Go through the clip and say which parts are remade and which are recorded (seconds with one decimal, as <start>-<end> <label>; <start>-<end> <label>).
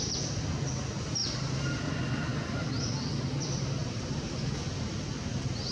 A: 0.0-1.2 recorded; 1.2-1.8 remade; 1.8-2.3 recorded; 2.3-2.8 remade; 2.8-3.8 recorded; 3.8-4.3 remade; 4.3-5.7 recorded